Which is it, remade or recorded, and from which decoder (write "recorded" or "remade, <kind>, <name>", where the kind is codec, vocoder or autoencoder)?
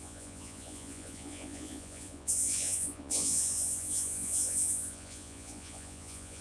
remade, vocoder, Vocos